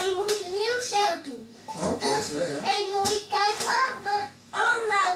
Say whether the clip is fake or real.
fake